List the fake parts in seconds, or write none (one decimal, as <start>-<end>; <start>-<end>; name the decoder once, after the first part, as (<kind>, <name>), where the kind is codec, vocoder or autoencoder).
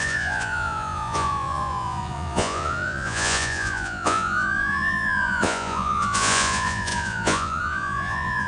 0.0-8.5 (vocoder, Vocos)